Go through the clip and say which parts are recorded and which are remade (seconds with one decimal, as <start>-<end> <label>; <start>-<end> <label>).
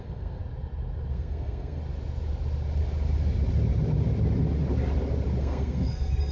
0.0-0.4 remade; 0.4-1.1 recorded; 1.1-1.8 remade; 1.8-5.4 recorded; 5.4-6.3 remade